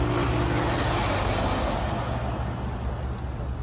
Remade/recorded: recorded